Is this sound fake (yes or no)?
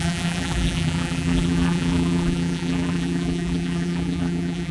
yes